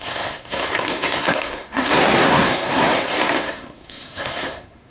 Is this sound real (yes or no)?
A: no